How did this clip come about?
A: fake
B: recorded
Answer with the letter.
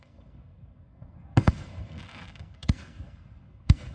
A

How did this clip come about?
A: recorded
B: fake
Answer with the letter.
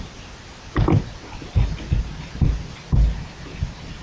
A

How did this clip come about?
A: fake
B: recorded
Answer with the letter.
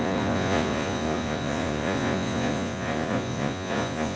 A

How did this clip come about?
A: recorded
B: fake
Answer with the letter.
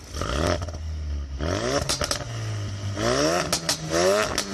A